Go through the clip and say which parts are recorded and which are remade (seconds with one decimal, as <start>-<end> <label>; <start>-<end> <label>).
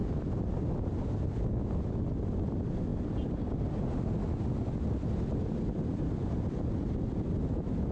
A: 0.0-7.9 recorded